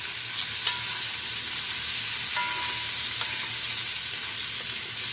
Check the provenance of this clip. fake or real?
real